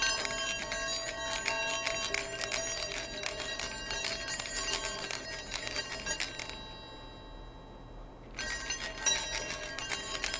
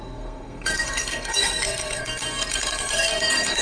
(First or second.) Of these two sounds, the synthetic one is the second